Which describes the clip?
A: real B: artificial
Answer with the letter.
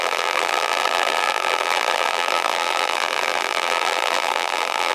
B